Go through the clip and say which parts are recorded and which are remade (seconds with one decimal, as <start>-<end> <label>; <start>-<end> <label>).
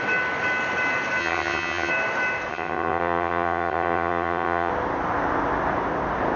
0.0-1.2 recorded; 1.2-1.9 remade; 1.9-2.5 recorded; 2.5-4.7 remade; 4.7-6.4 recorded